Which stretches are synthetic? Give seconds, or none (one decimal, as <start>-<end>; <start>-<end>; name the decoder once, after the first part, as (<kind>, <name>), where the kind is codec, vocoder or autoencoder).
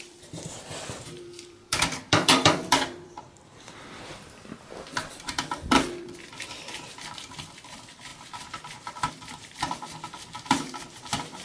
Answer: 0.0-8.1 (vocoder, BigVGAN v2); 9.1-11.4